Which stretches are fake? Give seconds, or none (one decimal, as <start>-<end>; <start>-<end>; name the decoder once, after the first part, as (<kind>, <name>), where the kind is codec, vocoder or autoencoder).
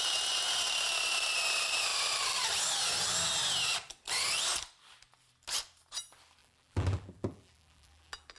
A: 6.4-8.4 (vocoder, BigVGAN v2)